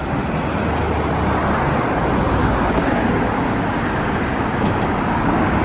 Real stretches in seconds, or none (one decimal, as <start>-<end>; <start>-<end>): 0.0-2.4